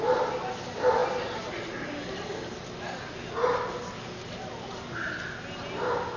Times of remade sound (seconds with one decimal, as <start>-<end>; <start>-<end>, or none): none